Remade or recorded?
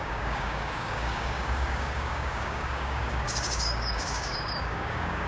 remade